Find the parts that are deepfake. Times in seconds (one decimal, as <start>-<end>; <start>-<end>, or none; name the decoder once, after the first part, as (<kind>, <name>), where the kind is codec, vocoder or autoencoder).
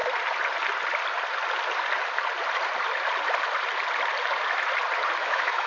5.2-5.7 (autoencoder, DAC-VAE)